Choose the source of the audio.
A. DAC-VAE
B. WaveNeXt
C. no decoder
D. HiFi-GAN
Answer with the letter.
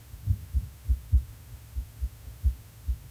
A